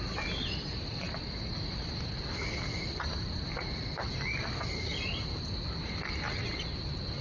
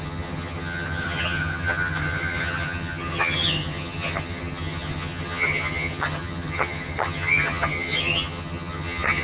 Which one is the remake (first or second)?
second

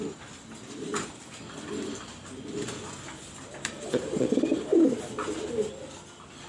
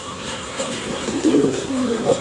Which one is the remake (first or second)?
second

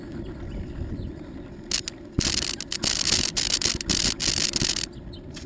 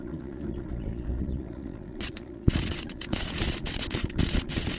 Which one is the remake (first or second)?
second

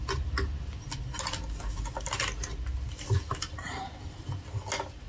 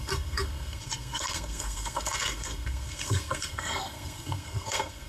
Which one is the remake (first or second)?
second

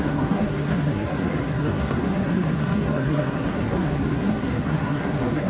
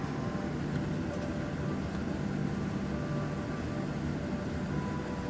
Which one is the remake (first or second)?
first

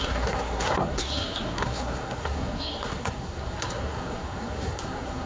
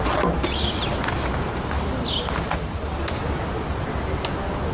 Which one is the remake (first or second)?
first